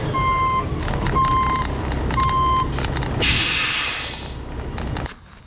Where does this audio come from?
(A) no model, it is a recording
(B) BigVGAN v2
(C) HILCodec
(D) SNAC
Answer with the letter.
A